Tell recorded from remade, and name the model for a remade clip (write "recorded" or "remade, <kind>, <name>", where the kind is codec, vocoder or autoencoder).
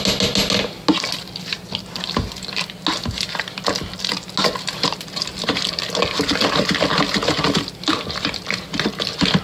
recorded